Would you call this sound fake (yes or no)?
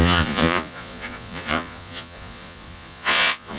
yes